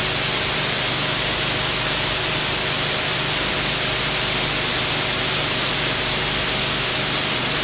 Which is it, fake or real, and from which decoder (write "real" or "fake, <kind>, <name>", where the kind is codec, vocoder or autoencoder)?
real